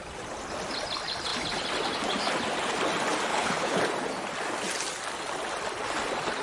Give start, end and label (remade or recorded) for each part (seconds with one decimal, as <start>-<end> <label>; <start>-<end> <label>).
0.0-3.3 recorded; 3.3-3.8 remade; 3.8-6.4 recorded